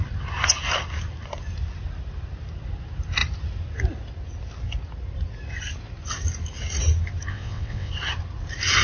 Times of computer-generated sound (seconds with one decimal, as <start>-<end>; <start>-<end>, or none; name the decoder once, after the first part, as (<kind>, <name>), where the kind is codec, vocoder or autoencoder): 7.3-7.9 (vocoder, WaveNeXt)